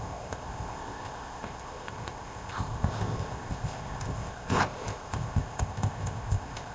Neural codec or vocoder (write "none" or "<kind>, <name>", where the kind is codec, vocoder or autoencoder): codec, ZipCodec